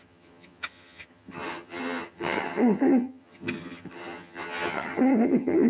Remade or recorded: remade